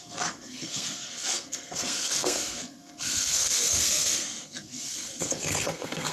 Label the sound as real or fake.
fake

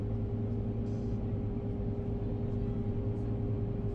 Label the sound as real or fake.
real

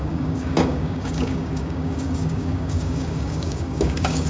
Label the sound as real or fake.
fake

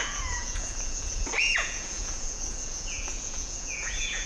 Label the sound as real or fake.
fake